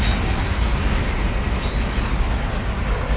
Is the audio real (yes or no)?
yes